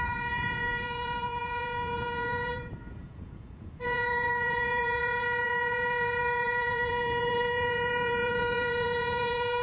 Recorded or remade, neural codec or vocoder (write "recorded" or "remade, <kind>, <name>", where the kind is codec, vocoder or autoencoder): remade, vocoder, Vocos